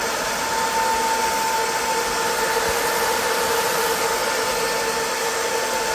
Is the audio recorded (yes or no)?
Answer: yes